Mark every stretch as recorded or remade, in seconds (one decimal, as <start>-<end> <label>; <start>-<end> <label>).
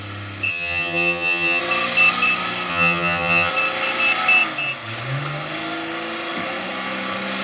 0.0-0.5 recorded; 0.5-1.6 remade; 1.6-2.7 recorded; 2.7-3.5 remade; 3.5-7.4 recorded